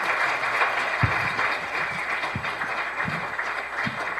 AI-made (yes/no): no